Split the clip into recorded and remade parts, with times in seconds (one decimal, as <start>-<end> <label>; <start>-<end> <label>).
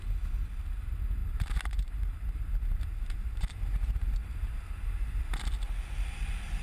0.0-1.2 recorded; 1.2-5.2 remade; 5.2-6.6 recorded